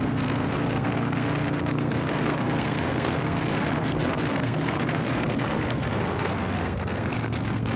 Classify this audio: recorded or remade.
remade